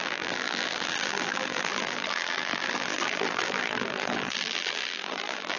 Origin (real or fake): fake